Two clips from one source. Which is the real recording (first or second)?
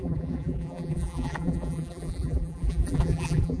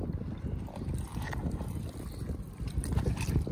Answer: second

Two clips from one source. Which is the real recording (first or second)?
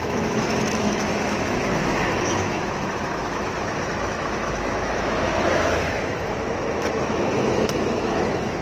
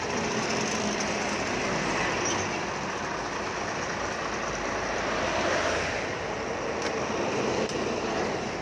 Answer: second